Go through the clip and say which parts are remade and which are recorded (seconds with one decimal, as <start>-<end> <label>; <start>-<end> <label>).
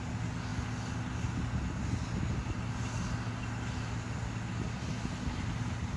0.0-6.0 recorded